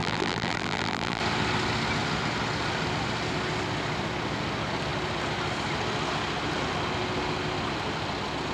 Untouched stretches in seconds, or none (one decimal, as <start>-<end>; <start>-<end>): 1.2-8.5